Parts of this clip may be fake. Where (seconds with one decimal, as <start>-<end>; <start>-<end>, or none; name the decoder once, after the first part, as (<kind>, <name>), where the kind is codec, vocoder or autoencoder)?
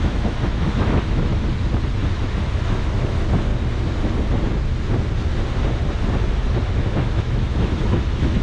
0.0-1.3 (autoencoder, DAC-VAE); 2.2-3.5; 6.7-8.4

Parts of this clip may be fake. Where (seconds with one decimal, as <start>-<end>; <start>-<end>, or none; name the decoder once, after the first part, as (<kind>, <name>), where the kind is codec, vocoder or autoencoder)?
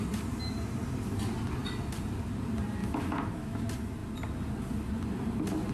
2.8-3.6 (autoencoder, DAC-VAE)